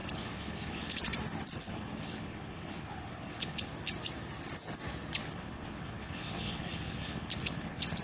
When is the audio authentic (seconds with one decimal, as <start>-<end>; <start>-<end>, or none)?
1.1-1.5; 3.7-5.2